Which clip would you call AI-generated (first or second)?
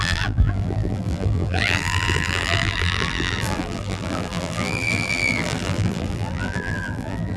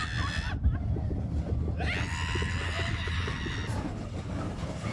first